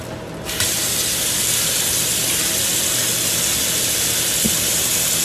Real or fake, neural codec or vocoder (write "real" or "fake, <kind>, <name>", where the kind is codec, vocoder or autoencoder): real